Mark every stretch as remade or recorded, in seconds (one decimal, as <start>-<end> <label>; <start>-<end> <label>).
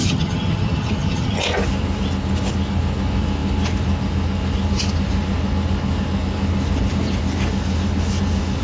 0.0-1.4 remade; 1.4-8.6 recorded